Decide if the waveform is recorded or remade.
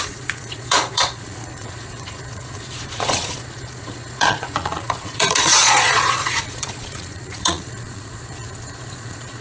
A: remade